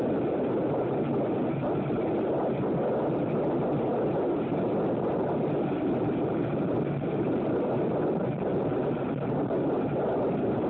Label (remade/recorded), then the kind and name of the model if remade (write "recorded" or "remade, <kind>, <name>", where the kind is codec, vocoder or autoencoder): recorded